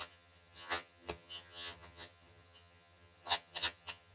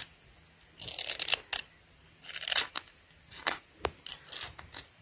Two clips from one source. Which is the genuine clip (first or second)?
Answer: second